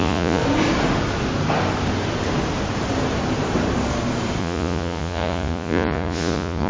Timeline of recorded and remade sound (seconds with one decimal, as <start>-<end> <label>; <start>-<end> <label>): 0.0-0.4 remade; 0.4-4.4 recorded; 4.4-6.7 remade